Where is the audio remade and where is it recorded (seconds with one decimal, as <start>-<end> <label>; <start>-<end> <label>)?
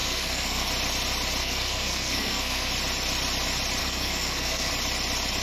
0.0-0.7 remade; 0.7-1.4 recorded; 1.4-2.7 remade; 2.7-3.8 recorded; 3.8-4.7 remade; 4.7-5.4 recorded